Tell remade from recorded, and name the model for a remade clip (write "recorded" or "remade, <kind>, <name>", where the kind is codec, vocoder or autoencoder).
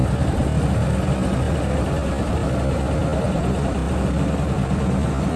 recorded